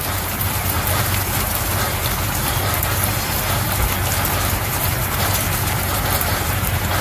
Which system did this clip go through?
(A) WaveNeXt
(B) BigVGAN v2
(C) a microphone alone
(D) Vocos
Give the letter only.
B